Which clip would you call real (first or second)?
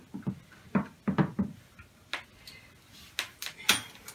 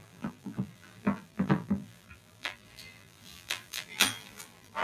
first